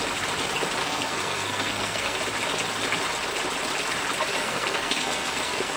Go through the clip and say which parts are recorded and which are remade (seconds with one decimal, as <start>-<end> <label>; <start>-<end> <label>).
0.0-0.8 recorded; 0.8-2.2 remade; 2.2-4.3 recorded; 4.3-5.8 remade